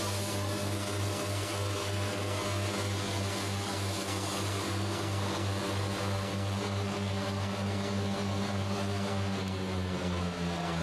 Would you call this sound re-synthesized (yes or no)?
yes